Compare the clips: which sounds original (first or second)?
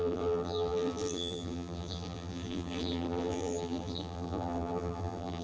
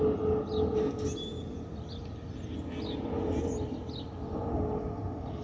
second